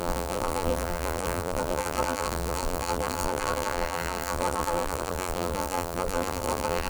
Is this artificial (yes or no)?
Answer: yes